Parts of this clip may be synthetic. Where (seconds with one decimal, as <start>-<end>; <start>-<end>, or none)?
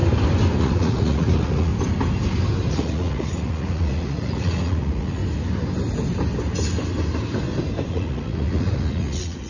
0.6-1.7; 2.7-5.2; 7.9-9.5